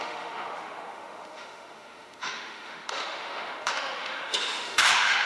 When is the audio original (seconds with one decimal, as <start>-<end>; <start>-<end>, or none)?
none